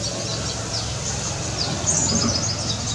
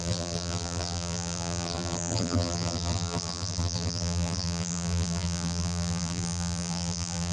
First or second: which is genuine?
first